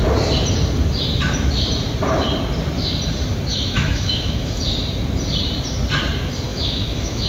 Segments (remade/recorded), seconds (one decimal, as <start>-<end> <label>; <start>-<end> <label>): 0.0-3.5 recorded; 3.5-4.6 remade; 4.6-6.5 recorded; 6.5-7.3 remade